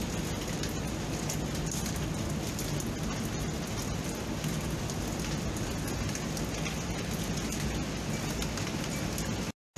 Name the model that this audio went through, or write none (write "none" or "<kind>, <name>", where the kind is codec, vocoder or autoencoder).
none